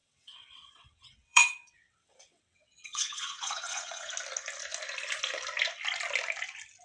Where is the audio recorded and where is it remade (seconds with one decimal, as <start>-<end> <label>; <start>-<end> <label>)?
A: 0.0-4.1 remade; 4.1-6.8 recorded

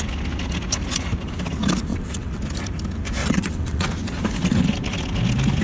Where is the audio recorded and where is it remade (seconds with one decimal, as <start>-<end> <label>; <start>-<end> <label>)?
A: 0.0-1.9 recorded; 1.9-2.4 remade; 2.4-3.2 recorded; 3.2-3.9 remade; 3.9-5.6 recorded

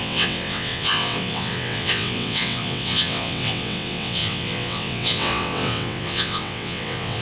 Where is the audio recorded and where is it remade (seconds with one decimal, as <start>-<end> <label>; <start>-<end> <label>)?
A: 0.0-7.2 remade

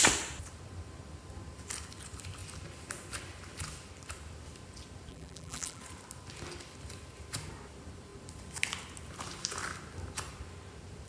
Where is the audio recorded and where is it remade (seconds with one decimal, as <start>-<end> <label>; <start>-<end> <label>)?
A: 0.0-5.1 recorded; 5.1-5.8 remade; 5.8-11.1 recorded

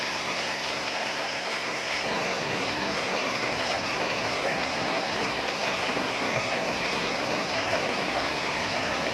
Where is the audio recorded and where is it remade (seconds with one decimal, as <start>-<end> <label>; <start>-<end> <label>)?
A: 0.0-9.1 remade

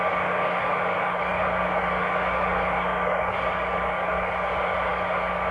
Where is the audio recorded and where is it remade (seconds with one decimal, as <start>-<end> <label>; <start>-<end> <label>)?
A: 0.0-5.5 remade

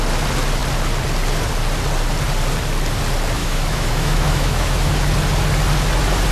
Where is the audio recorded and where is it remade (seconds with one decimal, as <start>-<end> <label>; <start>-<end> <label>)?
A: 0.0-3.4 recorded; 3.4-4.9 remade; 4.9-6.3 recorded

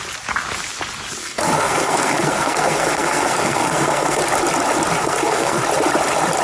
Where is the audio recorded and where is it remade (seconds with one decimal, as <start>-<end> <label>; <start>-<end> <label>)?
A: 0.0-1.2 recorded; 1.2-4.2 remade; 4.2-5.0 recorded; 5.0-5.6 remade; 5.6-6.4 recorded